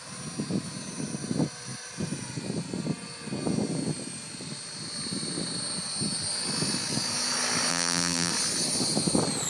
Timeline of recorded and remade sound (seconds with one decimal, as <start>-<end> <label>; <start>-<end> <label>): 0.0-7.7 recorded; 7.7-8.3 remade; 8.3-9.5 recorded